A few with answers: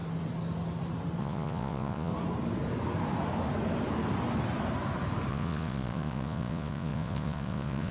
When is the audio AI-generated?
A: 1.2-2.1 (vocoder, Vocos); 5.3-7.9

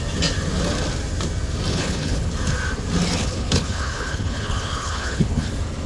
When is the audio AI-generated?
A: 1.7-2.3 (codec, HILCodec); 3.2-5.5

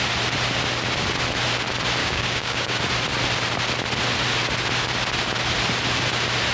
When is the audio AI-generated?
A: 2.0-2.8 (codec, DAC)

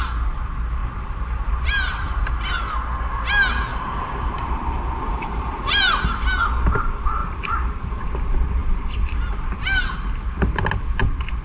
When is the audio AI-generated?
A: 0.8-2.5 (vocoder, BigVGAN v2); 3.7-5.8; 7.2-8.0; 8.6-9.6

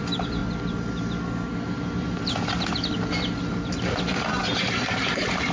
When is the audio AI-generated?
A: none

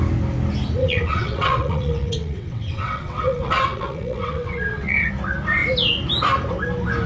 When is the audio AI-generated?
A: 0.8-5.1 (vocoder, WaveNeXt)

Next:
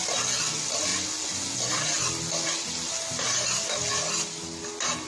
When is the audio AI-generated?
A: none